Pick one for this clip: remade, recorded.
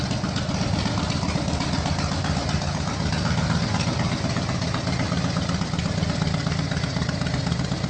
recorded